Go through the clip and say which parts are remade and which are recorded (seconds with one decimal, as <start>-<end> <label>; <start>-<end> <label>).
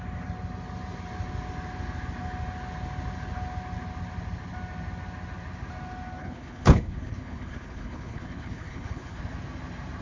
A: 0.0-6.2 recorded; 6.2-9.2 remade; 9.2-10.0 recorded